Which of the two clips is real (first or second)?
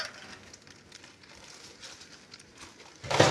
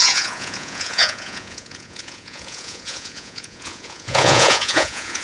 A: first